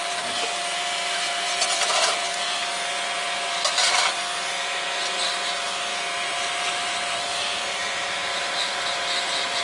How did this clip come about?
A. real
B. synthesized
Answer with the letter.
B